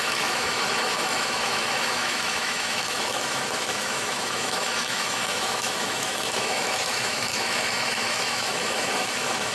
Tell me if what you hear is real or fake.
fake